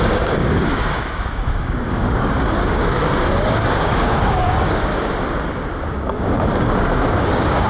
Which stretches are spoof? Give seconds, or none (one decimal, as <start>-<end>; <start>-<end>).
0.0-4.9; 5.9-7.7